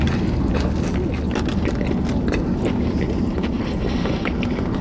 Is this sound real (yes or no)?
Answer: yes